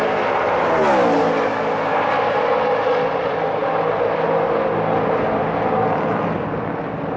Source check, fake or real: real